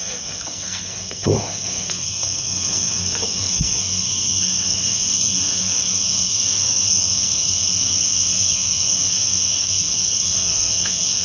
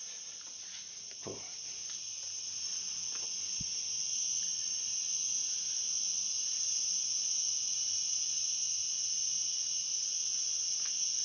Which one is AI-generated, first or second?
first